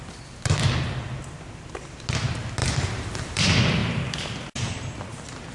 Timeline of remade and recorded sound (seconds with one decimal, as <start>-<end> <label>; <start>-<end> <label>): 0.0-2.6 recorded; 2.6-3.4 remade; 3.4-3.8 recorded; 3.8-4.4 remade; 4.4-5.5 recorded